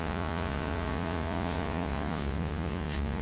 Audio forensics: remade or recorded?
remade